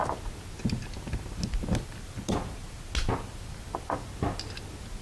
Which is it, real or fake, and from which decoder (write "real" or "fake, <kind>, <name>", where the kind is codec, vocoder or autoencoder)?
real